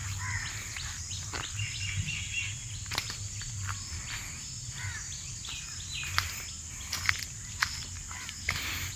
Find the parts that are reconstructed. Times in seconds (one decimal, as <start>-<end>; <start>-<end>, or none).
none